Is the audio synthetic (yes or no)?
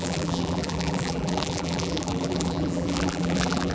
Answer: yes